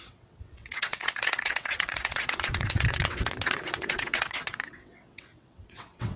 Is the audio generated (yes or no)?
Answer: yes